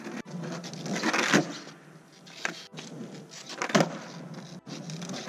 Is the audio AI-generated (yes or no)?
no